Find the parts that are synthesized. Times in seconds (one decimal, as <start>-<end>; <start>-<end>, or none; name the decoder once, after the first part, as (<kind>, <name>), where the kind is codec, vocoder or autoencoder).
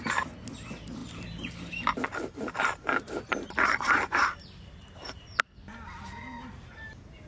1.0-5.4 (vocoder, BigVGAN v2)